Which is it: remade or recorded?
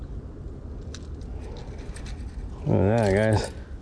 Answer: recorded